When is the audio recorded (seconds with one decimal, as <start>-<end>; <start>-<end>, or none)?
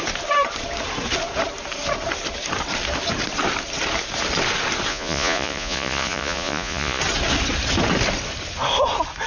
0.0-4.9; 7.0-9.3